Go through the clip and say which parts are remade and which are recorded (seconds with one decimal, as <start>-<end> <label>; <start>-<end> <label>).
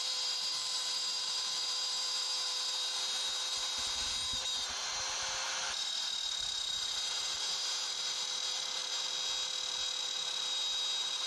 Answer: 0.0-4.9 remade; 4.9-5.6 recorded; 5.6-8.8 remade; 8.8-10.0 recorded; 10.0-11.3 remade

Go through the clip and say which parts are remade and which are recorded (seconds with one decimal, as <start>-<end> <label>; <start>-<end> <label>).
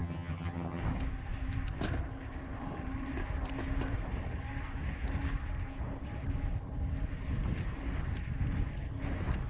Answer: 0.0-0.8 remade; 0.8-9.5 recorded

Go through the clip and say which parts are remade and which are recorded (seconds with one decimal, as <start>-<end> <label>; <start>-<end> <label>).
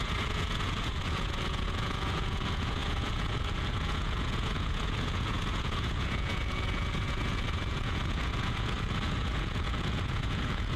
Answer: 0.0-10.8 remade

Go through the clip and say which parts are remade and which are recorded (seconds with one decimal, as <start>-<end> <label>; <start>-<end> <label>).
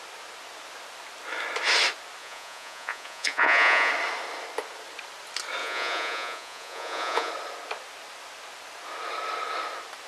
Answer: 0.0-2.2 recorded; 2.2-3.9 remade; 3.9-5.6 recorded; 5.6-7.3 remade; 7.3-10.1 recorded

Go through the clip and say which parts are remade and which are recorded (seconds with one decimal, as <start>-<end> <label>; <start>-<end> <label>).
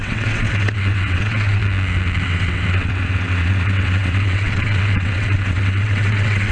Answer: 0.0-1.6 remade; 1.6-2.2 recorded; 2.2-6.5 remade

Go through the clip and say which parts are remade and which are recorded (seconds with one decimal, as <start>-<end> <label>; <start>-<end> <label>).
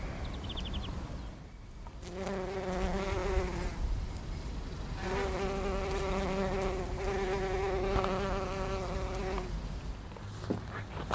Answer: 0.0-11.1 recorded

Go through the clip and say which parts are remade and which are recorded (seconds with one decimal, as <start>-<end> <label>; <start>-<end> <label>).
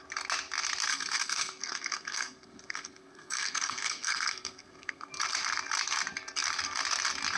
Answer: 0.0-0.9 recorded; 0.9-5.1 remade; 5.1-7.4 recorded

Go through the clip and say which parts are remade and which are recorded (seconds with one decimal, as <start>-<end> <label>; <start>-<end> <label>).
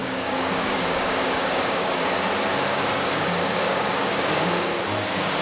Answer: 0.0-2.1 remade; 2.1-2.7 recorded; 2.7-4.8 remade; 4.8-5.4 recorded